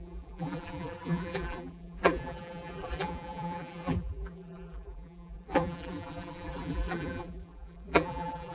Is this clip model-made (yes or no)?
yes